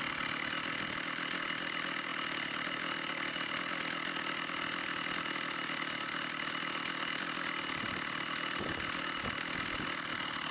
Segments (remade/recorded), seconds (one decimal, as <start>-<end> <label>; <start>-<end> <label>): 0.0-10.5 recorded